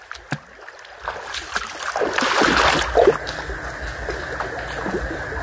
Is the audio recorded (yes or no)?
yes